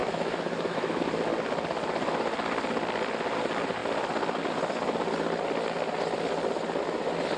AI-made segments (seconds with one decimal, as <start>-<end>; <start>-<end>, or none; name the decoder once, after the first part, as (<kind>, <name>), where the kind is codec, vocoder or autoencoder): 0.0-1.0 (autoencoder, DAC-VAE)